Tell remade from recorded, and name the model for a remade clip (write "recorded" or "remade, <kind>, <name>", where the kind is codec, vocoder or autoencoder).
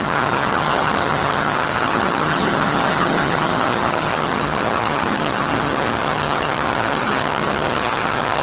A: remade, vocoder, HiFi-GAN